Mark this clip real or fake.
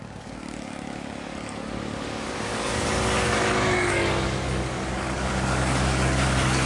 fake